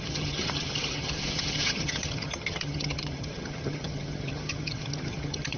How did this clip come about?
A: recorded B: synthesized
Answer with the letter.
B